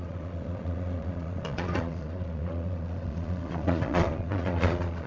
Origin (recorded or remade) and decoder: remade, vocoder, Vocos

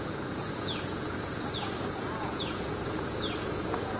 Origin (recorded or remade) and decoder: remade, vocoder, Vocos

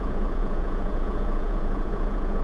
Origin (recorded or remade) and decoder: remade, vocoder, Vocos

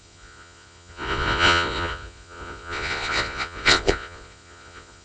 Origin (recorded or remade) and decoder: remade, vocoder, Vocos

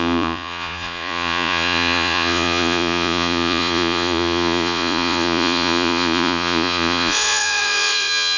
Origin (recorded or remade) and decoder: remade, vocoder, Vocos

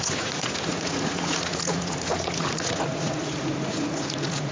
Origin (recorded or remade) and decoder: remade, vocoder, Vocos